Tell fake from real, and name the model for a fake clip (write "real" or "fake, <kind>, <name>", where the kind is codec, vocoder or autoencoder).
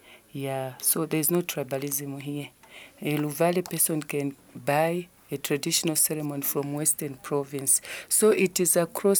real